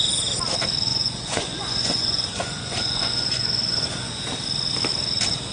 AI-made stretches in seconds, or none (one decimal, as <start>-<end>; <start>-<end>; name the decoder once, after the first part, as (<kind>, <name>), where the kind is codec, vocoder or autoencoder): 0.9-4.2 (vocoder, Vocos)